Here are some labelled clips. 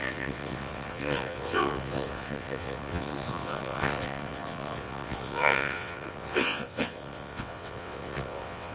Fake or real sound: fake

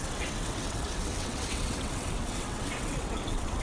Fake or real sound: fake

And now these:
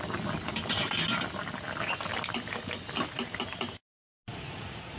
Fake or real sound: real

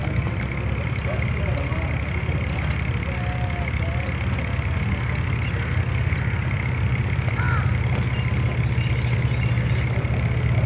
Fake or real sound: real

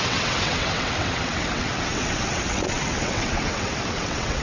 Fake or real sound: fake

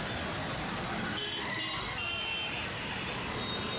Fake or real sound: real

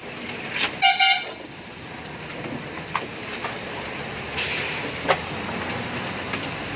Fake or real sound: real